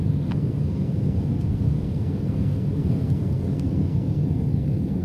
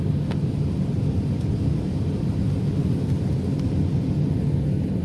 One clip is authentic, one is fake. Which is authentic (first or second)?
second